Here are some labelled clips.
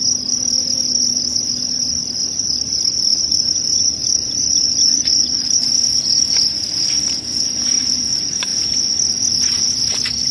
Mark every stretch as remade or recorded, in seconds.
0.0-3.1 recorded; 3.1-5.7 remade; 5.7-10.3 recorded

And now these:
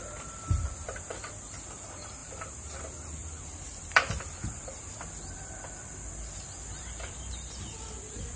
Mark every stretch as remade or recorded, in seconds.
0.0-2.2 recorded; 2.2-2.8 remade; 2.8-3.2 recorded; 3.2-7.2 remade; 7.2-8.4 recorded

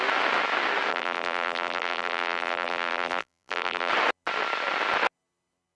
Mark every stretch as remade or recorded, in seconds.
0.0-0.9 recorded; 0.9-3.9 remade; 3.9-5.8 recorded

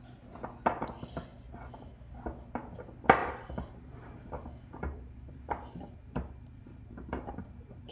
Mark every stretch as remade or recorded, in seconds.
0.0-3.2 recorded; 3.2-7.9 remade

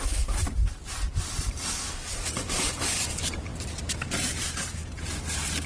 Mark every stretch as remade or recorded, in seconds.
0.0-0.8 remade; 0.8-2.1 recorded; 2.1-5.7 remade

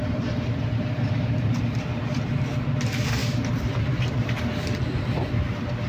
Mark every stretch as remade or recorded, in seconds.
0.0-1.5 remade; 1.5-3.2 recorded; 3.2-4.4 remade; 4.4-5.9 recorded